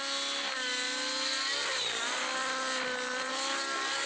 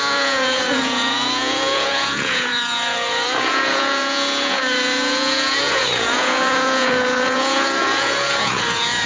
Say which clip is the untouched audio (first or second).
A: first